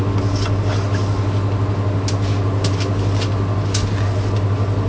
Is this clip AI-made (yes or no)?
no